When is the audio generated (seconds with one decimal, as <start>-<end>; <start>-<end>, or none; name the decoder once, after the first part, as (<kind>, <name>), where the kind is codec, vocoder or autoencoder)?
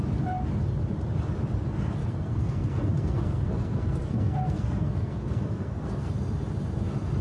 2.0-6.1 (codec, SNAC)